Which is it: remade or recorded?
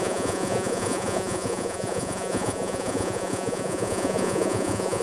remade